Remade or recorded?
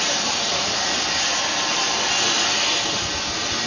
recorded